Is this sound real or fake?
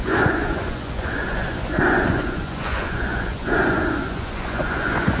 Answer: fake